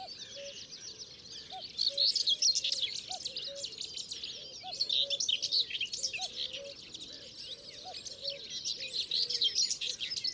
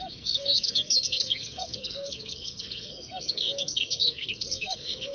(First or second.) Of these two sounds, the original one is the first